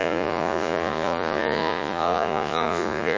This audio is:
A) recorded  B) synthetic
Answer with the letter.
B